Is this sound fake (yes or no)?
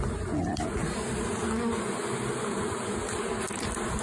no